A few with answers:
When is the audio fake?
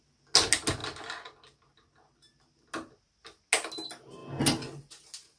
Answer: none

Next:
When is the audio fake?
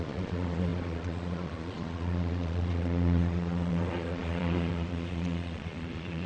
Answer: 0.0-6.3 (vocoder, Vocos)